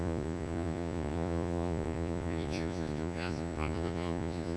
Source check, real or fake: fake